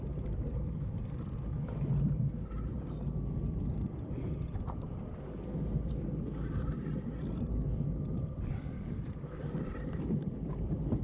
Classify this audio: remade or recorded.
remade